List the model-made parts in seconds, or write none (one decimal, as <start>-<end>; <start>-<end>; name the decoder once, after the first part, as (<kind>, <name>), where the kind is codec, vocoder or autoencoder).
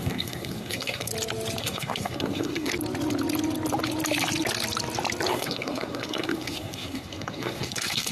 0.0-1.1 (codec, SNAC); 1.6-2.7; 5.3-8.1